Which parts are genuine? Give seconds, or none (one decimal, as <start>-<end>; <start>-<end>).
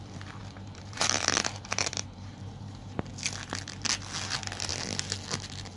0.0-0.4; 3.1-5.8